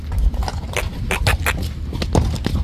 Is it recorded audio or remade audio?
recorded